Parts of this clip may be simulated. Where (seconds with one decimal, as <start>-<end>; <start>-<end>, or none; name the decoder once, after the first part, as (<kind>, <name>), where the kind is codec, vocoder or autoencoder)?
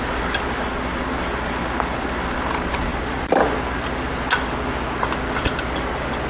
none